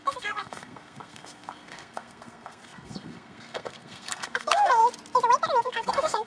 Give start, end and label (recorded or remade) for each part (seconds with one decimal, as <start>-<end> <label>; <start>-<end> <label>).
0.0-4.8 remade; 4.8-5.6 recorded; 5.6-6.3 remade